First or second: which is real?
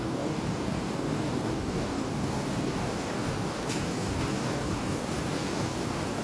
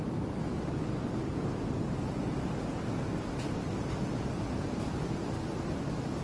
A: second